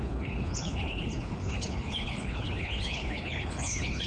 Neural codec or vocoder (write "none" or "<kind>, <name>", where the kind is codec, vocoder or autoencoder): codec, HILCodec